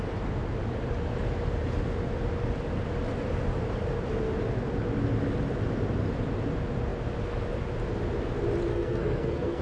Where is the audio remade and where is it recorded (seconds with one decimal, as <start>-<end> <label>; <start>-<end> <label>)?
0.0-8.7 recorded; 8.7-9.6 remade